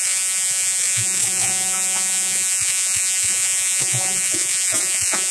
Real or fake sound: fake